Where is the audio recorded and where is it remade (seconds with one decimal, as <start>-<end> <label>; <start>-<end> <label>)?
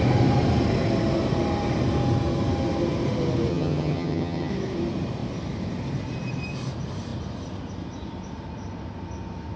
0.0-3.5 recorded; 3.5-4.5 remade; 4.5-9.6 recorded